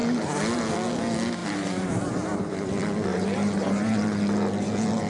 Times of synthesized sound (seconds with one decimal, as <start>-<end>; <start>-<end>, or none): 1.4-2.7; 3.1-4.2